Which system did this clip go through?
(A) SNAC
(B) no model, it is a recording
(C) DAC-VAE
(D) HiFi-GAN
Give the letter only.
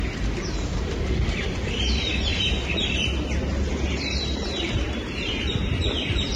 B